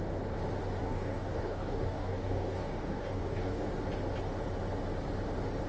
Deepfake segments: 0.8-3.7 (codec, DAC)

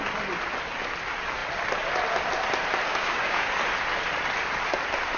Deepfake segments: 2.9-3.5 (codec, DAC)

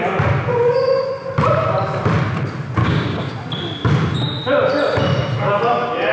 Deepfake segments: 0.5-1.1 (codec, DAC); 2.8-3.3

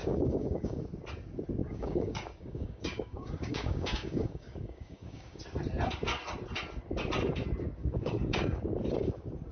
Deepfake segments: 0.0-0.8 (codec, DAC); 1.6-5.4; 7.8-8.6

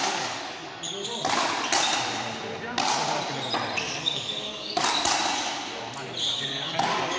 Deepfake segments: 0.0-1.1 (codec, DAC); 4.0-4.8; 6.2-7.2

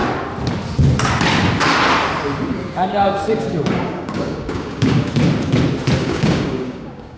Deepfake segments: 2.5-5.1 (codec, DAC); 6.0-7.2

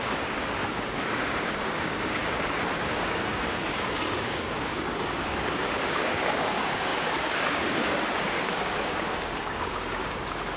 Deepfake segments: 0.0-2.2 (codec, DAC); 2.9-10.6